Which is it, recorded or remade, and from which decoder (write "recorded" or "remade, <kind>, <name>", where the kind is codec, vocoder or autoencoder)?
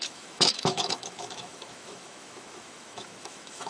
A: remade, autoencoder, DAC-VAE